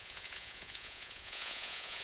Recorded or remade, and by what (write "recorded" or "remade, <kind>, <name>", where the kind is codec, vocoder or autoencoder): remade, vocoder, Vocos